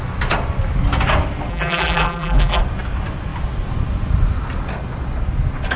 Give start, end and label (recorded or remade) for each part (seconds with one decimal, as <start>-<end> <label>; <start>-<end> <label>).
0.0-1.5 recorded; 1.5-2.6 remade; 2.6-5.8 recorded